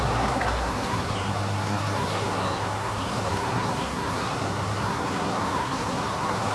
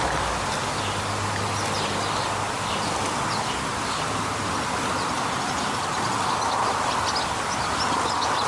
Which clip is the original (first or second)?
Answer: second